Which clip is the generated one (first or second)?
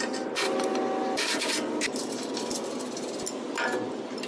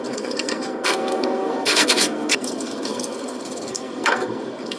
second